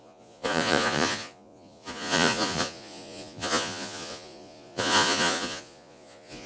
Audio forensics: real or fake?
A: fake